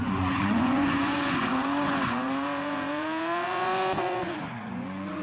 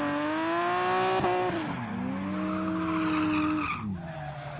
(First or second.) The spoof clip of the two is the first